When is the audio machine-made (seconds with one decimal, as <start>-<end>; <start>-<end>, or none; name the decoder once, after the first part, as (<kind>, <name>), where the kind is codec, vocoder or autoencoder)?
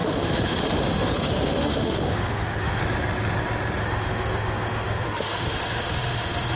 0.0-2.8 (autoencoder, DAC-VAE); 3.8-6.6